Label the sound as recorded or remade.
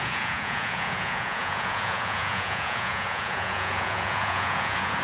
remade